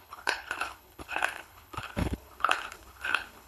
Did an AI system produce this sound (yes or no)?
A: yes